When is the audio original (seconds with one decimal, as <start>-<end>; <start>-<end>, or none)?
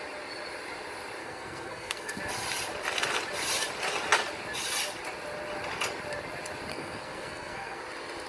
0.0-1.2; 2.2-6.7; 7.8-8.3